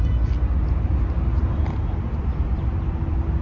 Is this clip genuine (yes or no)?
yes